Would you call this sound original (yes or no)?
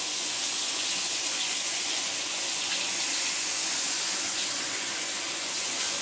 no